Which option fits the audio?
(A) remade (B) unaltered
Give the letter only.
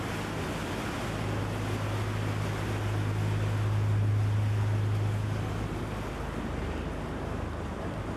B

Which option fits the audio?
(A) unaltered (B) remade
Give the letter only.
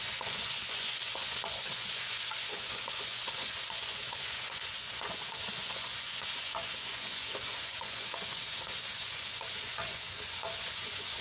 B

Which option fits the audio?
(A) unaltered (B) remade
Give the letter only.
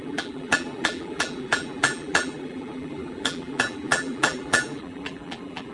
B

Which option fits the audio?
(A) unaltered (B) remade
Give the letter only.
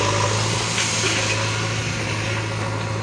A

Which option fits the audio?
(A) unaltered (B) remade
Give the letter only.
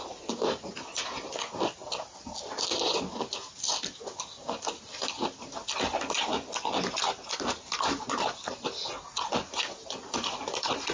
A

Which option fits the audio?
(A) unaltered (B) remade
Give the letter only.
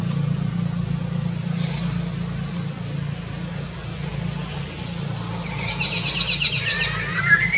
A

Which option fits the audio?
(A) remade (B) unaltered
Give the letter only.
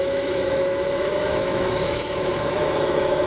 A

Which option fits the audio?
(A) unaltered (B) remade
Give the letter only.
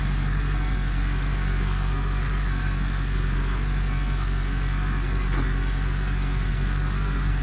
B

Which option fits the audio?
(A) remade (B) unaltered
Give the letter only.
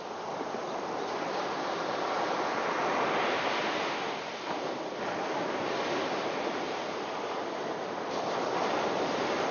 B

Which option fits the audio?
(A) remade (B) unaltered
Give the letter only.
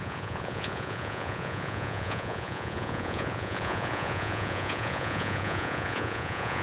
A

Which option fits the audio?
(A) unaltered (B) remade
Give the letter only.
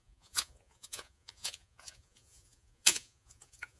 B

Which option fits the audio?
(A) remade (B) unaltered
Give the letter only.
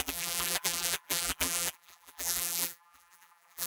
A